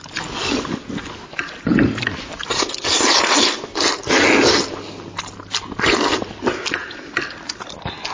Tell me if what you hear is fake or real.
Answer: real